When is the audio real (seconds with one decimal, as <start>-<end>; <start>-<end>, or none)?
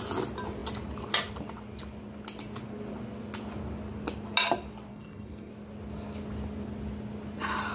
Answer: 0.0-4.9; 5.5-7.7